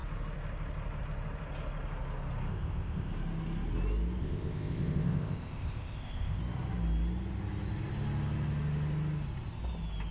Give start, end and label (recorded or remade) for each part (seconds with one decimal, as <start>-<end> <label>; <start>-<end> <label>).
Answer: 0.0-2.5 recorded; 2.5-3.1 remade; 3.1-4.2 recorded; 4.2-6.4 remade; 6.4-10.1 recorded